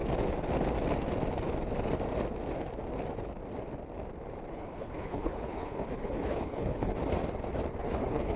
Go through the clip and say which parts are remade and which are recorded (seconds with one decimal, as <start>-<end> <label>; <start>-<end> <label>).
0.0-4.5 recorded; 4.5-6.9 remade; 6.9-7.8 recorded; 7.8-8.4 remade